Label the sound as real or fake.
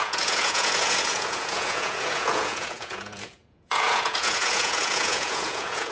fake